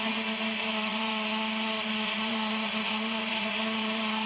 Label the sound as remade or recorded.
remade